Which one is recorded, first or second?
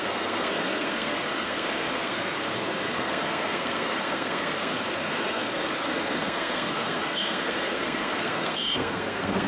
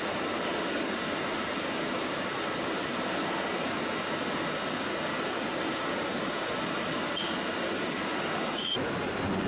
second